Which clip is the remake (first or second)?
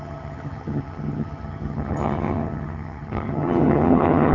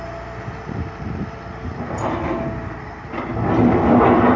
first